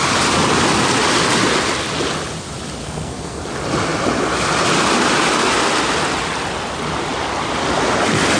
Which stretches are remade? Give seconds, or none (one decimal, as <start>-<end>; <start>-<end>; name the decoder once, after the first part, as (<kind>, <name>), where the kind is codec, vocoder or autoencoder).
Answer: 2.8-3.4 (codec, SNAC)